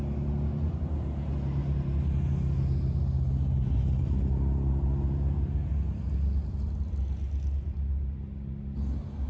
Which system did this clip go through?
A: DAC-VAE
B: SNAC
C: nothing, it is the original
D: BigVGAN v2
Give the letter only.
C